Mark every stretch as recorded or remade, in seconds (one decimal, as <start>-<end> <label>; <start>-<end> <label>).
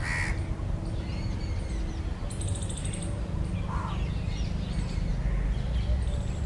0.0-6.5 recorded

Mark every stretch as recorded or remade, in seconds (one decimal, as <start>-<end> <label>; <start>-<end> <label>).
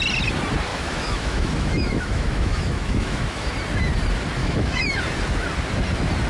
0.0-0.7 recorded; 0.7-3.5 remade; 3.5-4.4 recorded; 4.4-5.0 remade; 5.0-6.3 recorded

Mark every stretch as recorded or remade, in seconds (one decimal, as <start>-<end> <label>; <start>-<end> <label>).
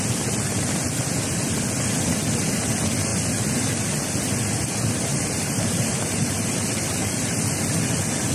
0.0-5.1 recorded; 5.1-7.5 remade; 7.5-8.3 recorded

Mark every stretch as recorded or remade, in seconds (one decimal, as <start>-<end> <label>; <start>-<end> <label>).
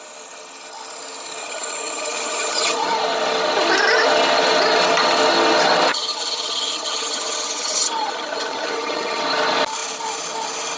0.0-1.4 recorded; 1.4-3.0 remade; 3.0-5.9 recorded; 5.9-9.2 remade; 9.2-10.8 recorded